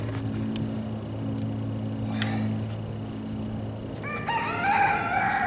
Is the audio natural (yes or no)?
yes